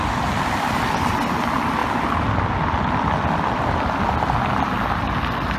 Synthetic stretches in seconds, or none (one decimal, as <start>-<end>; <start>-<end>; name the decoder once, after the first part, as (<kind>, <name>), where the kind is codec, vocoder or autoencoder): none